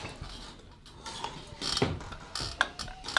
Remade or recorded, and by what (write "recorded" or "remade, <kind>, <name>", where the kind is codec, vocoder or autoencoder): recorded